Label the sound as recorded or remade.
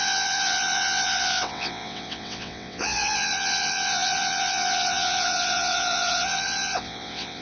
remade